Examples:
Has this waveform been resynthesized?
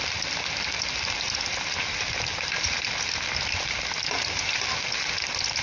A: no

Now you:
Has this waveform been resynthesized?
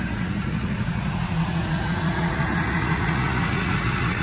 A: yes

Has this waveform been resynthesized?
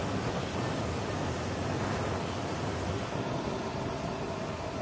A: no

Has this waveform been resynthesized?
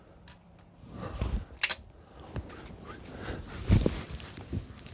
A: no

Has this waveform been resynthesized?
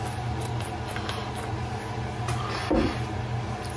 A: no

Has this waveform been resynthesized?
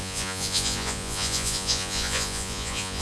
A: yes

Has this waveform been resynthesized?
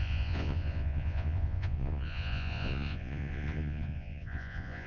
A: yes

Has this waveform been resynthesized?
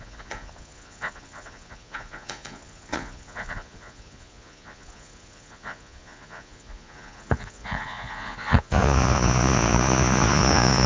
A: yes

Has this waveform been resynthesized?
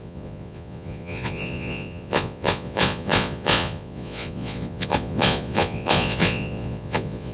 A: yes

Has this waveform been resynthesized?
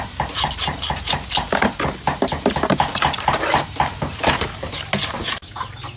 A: no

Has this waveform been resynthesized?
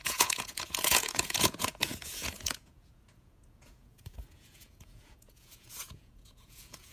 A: yes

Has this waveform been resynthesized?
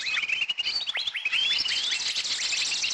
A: no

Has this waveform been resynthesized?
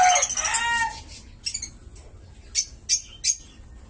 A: no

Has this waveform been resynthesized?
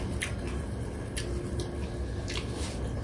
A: no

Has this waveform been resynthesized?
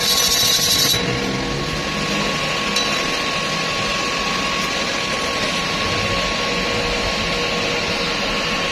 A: no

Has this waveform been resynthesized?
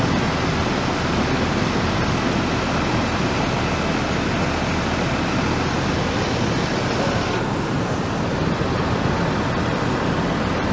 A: no